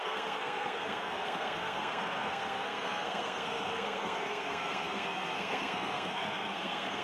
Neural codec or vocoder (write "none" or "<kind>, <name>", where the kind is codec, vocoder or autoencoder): codec, SNAC